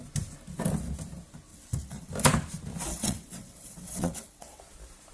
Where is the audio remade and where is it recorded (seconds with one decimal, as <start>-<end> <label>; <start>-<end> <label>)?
0.0-1.5 recorded; 1.5-2.1 remade; 2.1-2.9 recorded; 2.9-4.6 remade; 4.6-5.1 recorded